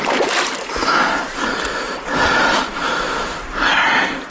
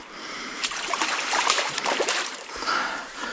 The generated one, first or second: second